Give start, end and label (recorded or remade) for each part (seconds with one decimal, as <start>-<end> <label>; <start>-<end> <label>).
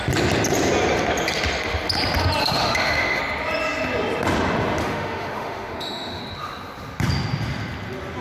0.0-2.4 recorded; 2.4-3.2 remade; 3.2-4.8 recorded; 4.8-6.2 remade; 6.2-8.2 recorded